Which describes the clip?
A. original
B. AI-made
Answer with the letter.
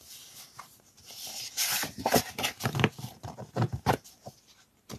B